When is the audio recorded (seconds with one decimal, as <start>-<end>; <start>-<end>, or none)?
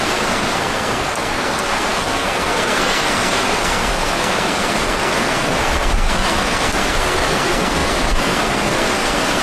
none